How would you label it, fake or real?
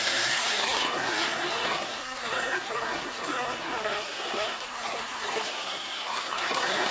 fake